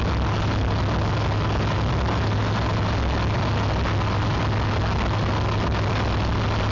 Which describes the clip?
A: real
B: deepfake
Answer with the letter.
A